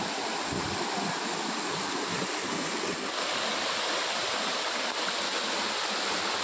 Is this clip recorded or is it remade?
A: recorded